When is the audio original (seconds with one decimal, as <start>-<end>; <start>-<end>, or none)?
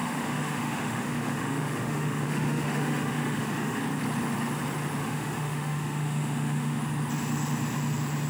3.8-5.0; 6.8-8.3